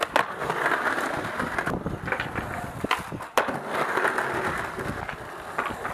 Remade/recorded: recorded